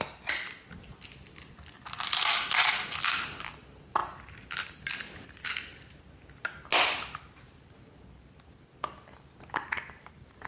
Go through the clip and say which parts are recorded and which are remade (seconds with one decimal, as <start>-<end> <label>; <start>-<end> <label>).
0.0-10.5 recorded